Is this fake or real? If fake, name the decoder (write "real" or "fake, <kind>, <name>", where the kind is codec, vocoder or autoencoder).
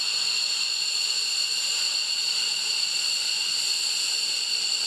real